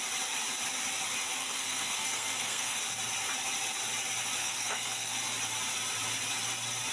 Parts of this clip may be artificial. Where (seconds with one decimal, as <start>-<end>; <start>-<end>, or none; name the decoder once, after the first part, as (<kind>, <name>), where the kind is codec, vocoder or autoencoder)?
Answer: 1.4-2.8 (codec, SNAC); 4.4-5.2